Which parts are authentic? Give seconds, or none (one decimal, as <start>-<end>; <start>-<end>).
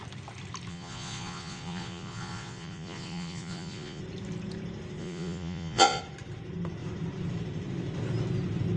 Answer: 0.0-0.7; 4.0-5.0; 6.0-8.8